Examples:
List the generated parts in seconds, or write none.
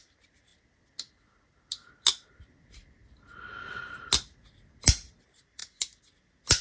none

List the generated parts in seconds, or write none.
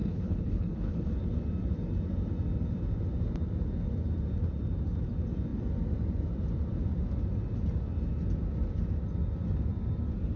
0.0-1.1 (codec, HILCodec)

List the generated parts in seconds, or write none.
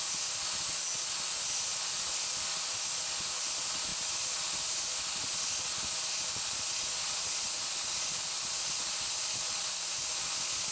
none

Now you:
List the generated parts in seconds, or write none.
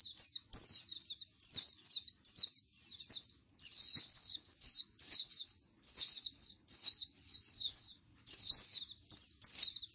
3.5-8.5 (codec, HILCodec)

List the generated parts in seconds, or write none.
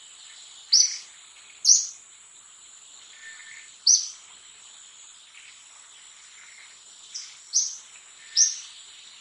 none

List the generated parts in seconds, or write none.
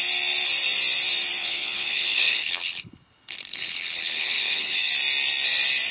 1.4-4.9 (codec, HILCodec)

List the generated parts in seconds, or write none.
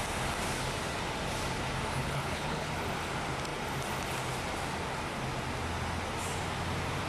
2.0-2.7 (codec, HILCodec)